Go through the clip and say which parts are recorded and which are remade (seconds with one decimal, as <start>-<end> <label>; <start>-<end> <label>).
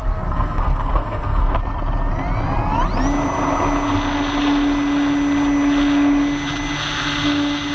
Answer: 0.0-1.6 remade; 1.6-7.7 recorded